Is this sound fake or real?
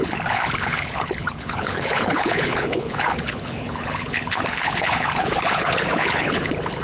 fake